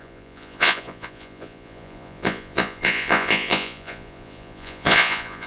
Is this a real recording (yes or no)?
no